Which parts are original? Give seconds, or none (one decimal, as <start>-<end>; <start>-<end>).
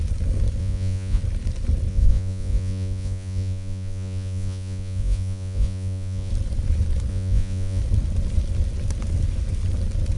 0.0-0.6; 1.2-1.9; 6.3-7.1; 7.8-10.2